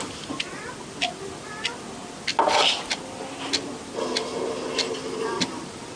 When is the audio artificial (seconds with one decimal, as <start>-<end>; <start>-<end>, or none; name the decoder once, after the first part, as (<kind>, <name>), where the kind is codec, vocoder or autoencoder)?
none